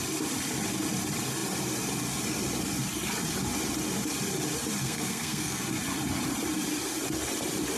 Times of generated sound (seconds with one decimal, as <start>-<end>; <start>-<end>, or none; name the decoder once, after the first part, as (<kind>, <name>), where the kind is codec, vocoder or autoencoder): 4.8-5.6 (codec, SNAC)